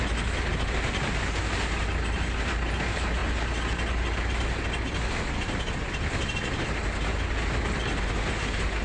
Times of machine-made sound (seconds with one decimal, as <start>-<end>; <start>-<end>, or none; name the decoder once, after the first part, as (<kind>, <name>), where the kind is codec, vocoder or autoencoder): none

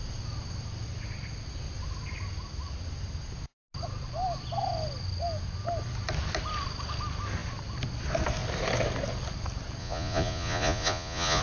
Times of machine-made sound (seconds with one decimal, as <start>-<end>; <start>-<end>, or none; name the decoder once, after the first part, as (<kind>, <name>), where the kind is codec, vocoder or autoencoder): 9.8-11.4 (vocoder, Vocos)

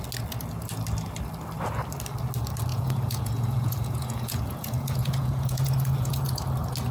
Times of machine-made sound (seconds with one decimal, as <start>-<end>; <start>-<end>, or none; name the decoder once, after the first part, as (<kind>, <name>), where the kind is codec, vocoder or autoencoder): 2.7-6.4 (vocoder, Vocos)